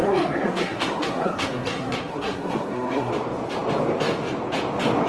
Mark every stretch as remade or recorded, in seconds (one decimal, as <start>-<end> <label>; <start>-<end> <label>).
0.0-3.1 remade; 3.1-5.1 recorded